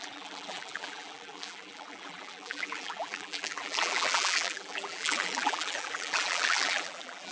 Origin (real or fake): fake